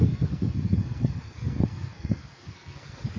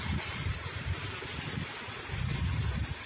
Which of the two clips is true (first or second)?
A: second